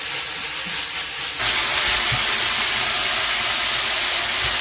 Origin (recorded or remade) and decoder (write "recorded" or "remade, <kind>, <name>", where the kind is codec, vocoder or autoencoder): recorded